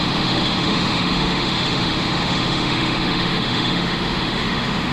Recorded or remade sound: remade